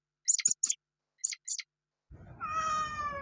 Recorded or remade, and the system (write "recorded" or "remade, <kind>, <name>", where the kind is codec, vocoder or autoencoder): recorded